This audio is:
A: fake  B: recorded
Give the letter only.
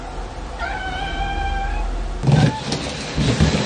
B